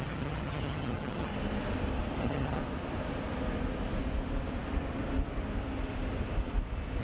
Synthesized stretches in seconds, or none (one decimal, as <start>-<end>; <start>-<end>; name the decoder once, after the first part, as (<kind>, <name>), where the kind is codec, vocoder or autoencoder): 0.0-1.3 (vocoder, HiFi-GAN); 2.2-2.6